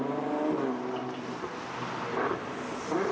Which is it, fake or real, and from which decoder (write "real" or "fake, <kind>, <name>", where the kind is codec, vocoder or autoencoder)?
real